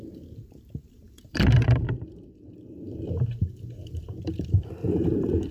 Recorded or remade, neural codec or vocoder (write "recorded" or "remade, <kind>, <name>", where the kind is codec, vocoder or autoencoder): remade, vocoder, BigVGAN v2